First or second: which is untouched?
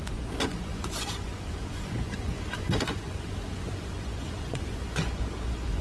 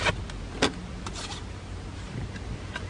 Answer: second